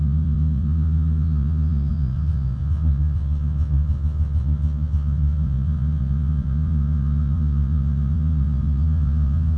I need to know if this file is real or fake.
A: fake